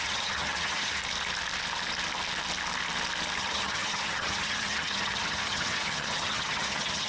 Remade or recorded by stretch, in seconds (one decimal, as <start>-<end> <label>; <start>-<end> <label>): 0.0-1.0 remade; 1.0-3.4 recorded; 3.4-7.1 remade